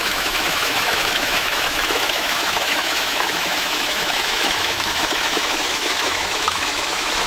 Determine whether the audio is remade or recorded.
remade